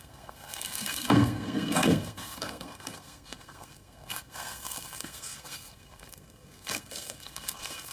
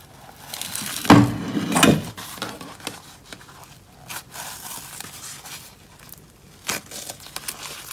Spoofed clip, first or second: first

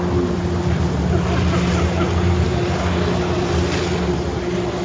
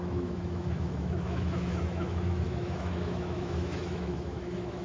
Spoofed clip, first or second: second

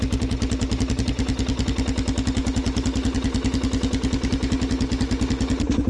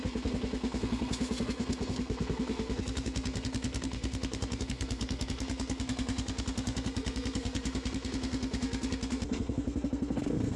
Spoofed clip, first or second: second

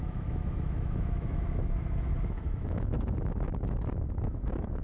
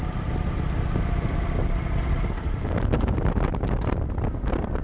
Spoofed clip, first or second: first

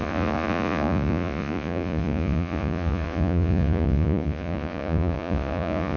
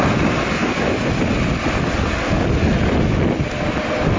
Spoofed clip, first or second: first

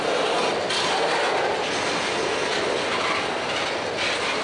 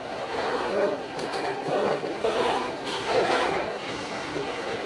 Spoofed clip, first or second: second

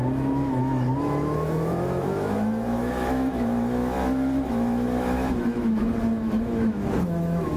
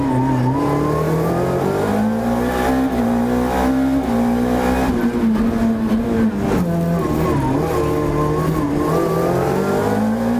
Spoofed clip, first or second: first